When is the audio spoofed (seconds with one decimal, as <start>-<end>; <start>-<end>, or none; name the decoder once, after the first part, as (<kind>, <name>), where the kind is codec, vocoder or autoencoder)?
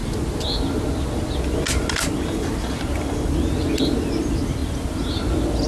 none